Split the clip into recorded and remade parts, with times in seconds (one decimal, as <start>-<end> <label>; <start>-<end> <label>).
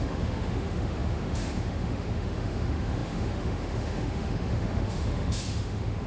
0.0-6.1 remade